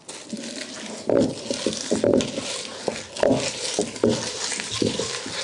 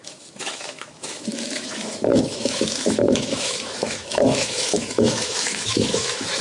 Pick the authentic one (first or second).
first